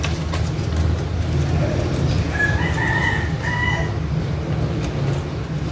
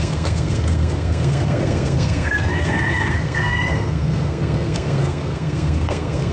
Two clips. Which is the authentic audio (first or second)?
first